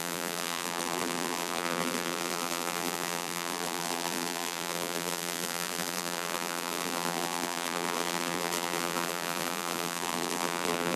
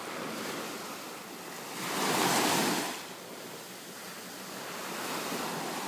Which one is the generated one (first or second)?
first